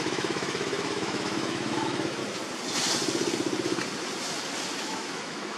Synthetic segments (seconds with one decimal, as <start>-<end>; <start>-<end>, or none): 0.0-2.2; 4.8-5.6